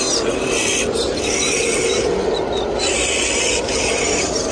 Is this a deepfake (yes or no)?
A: no